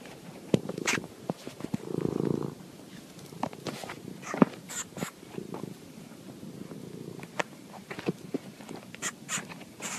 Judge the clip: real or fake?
fake